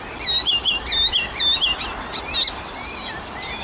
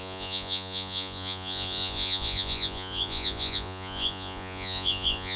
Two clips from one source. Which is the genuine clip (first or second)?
first